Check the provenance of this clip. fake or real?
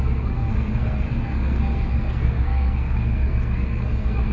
fake